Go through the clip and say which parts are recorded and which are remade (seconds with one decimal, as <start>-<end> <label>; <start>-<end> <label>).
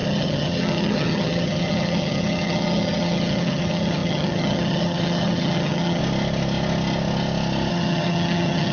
0.0-6.0 remade; 6.0-7.7 recorded; 7.7-8.7 remade